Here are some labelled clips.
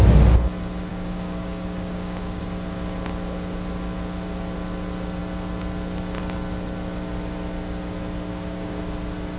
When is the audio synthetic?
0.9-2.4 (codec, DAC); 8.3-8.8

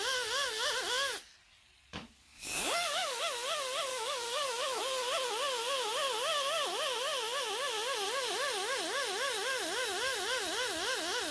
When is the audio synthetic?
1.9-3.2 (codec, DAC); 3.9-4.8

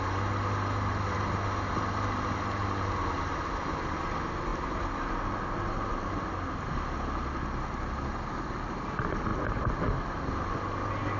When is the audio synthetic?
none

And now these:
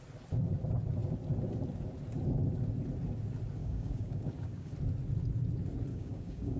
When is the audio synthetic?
3.6-4.7 (codec, DAC); 5.9-6.6

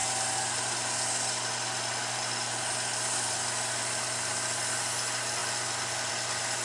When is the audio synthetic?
none

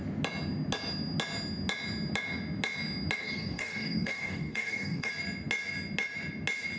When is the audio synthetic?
3.2-5.1 (codec, DAC)

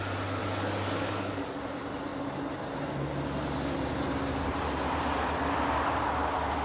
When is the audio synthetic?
0.4-1.6 (codec, DAC)

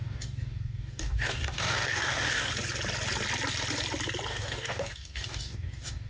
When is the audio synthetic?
0.0-2.5 (codec, DAC); 4.3-6.1